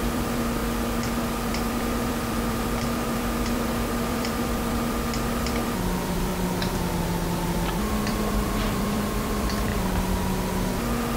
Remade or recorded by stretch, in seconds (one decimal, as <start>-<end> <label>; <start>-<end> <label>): 0.0-0.6 remade; 0.6-1.5 recorded; 1.5-6.3 remade; 6.3-7.9 recorded; 7.9-9.7 remade; 9.7-11.2 recorded